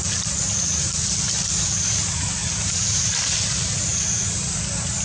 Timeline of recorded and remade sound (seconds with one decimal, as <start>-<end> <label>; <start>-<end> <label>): 0.0-5.0 recorded